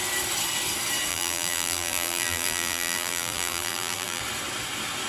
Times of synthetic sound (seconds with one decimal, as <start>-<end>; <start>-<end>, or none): 1.1-4.2